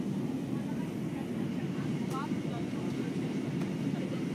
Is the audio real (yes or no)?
no